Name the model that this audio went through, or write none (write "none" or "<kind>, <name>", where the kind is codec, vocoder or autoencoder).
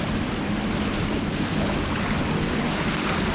none